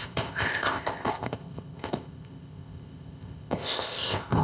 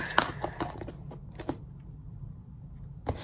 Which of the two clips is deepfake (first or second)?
first